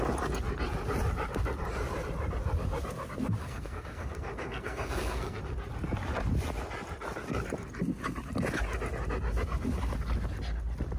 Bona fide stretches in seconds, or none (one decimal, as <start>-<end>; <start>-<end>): 0.0-3.4; 5.4-11.0